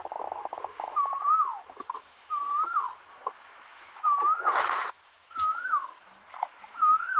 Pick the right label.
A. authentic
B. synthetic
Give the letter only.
B